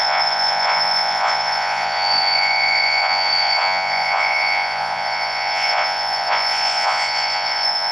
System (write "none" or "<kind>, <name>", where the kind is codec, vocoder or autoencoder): vocoder, Vocos